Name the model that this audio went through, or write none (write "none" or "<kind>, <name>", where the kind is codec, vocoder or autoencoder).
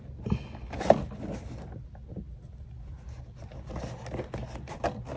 none